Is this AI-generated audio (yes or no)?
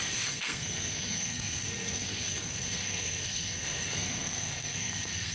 yes